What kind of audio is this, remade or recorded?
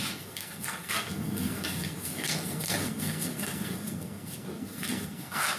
remade